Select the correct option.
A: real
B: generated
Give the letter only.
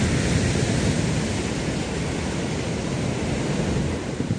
A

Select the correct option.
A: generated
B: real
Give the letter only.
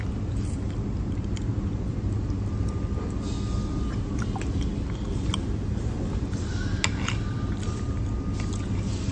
B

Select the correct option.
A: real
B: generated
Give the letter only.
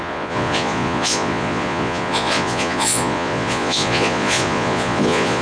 B